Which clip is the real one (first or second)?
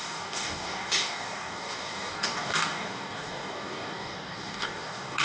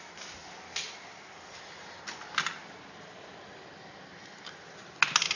second